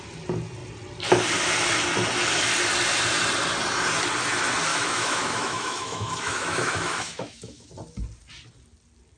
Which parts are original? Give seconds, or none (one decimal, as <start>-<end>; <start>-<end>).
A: 0.0-4.7; 7.7-9.2